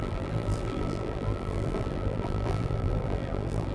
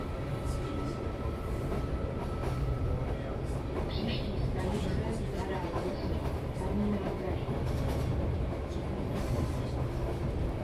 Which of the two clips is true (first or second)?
second